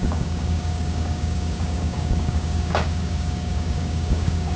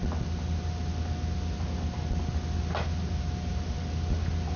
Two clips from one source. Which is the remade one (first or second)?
first